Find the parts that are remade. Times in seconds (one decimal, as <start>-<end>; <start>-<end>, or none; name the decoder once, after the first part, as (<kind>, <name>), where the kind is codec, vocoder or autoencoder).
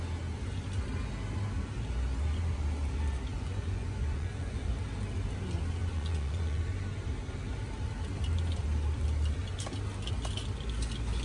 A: 3.3-4.7 (vocoder, Vocos); 5.8-6.6